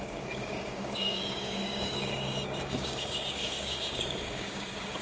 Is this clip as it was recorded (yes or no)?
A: no